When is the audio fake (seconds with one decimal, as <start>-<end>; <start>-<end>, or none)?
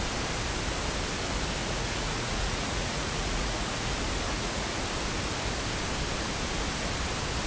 1.6-3.9; 4.3-4.8